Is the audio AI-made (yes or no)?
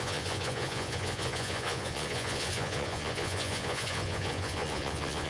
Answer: yes